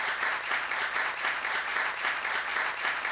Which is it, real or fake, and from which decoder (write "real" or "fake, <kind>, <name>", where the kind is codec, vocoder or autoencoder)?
fake, vocoder, BigVGAN v2